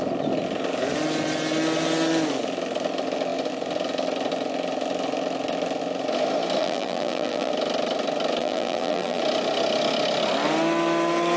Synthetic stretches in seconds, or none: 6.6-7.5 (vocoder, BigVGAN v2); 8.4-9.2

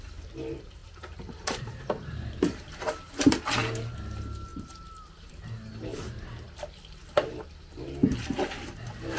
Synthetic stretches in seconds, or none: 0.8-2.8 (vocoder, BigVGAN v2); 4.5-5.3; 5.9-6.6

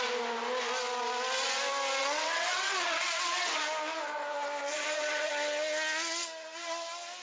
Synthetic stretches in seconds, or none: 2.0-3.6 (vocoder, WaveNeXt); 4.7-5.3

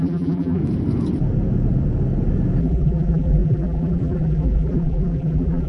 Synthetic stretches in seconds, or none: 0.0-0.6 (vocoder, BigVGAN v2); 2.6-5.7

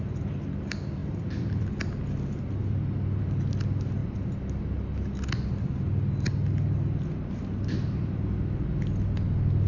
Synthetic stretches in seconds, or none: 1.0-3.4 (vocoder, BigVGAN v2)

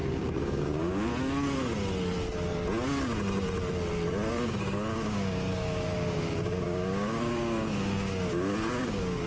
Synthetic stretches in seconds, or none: 0.0-1.1 (codec, DAC); 4.3-9.3